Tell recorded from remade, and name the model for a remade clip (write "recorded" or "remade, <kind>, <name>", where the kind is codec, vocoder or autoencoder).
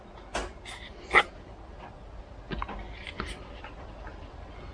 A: recorded